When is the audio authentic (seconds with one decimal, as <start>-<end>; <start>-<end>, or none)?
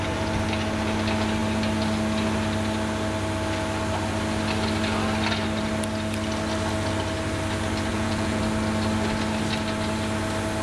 0.0-7.9; 8.4-10.6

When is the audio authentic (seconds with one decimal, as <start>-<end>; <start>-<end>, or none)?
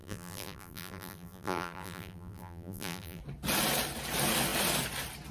3.2-5.3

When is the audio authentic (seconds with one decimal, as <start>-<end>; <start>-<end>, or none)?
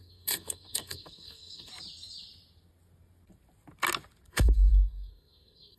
1.7-4.3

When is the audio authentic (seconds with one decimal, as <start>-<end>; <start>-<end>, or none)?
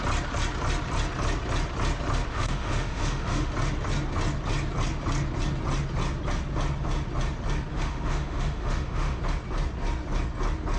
0.0-2.3; 3.5-7.7; 9.2-10.8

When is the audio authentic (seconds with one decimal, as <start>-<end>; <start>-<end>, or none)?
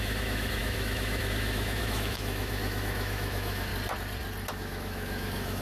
3.7-4.5